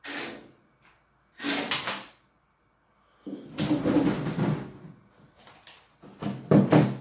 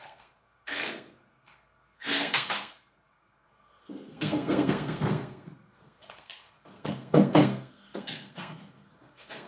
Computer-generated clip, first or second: second